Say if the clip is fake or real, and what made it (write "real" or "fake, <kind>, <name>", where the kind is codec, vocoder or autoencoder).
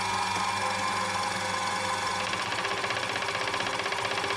real